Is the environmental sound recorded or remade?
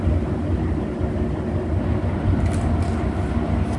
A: recorded